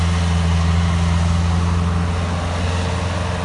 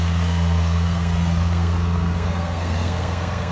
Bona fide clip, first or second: first